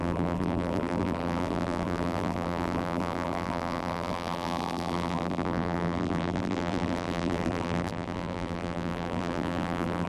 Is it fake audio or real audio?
fake